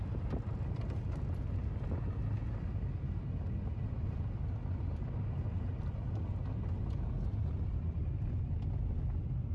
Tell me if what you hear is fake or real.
real